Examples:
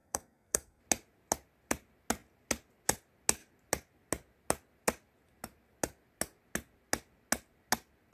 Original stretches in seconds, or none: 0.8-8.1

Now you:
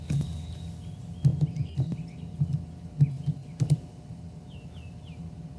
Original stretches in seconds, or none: 0.0-5.6

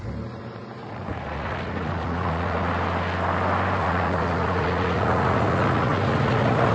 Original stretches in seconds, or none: 0.0-0.8; 2.7-3.8

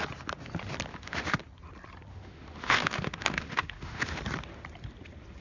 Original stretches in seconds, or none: 0.0-0.9; 1.4-2.1; 4.2-5.4

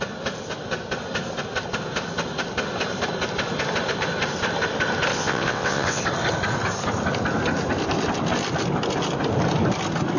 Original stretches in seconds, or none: 0.0-5.1; 6.0-10.2

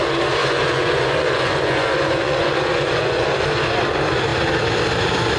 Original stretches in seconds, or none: 0.0-0.4; 3.3-5.4